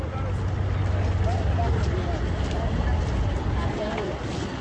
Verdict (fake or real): real